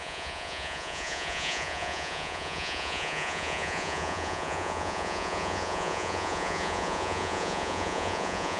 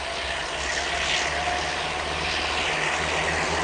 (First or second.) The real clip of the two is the second